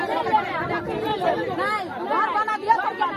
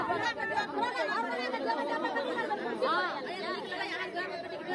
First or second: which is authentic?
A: second